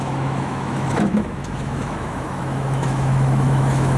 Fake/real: fake